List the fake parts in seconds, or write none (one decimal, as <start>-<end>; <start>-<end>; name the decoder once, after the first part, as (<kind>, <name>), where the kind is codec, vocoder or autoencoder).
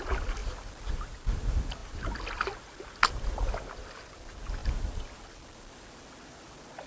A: none